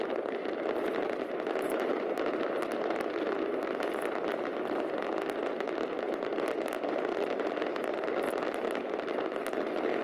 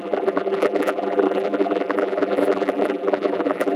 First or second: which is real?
first